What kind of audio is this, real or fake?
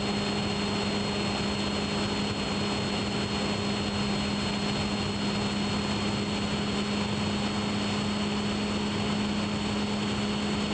real